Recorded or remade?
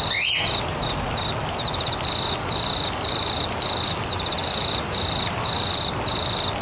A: recorded